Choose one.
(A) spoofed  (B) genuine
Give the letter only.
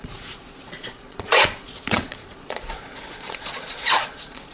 A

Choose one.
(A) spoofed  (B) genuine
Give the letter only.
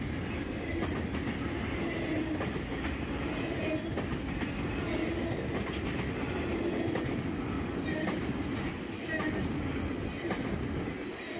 B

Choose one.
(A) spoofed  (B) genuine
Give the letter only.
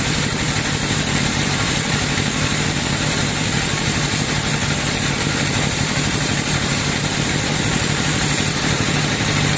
A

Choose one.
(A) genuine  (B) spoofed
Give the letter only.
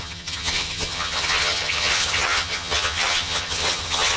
B